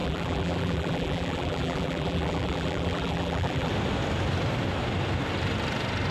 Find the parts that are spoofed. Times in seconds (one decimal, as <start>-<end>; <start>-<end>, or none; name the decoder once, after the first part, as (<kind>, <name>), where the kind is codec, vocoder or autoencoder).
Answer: 0.0-3.7 (vocoder, BigVGAN v2)